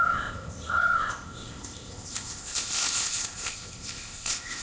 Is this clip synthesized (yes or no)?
yes